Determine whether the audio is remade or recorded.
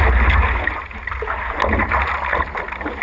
recorded